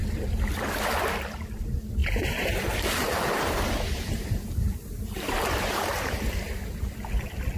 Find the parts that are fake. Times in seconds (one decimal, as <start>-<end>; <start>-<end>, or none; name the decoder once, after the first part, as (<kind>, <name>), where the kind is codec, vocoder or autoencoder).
2.0-6.2 (vocoder, BigVGAN v2)